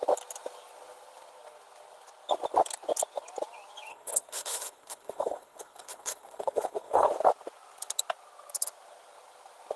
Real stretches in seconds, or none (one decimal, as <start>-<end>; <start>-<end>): 0.0-3.9; 7.1-9.8